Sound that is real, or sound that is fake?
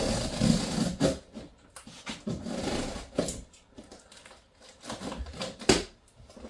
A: real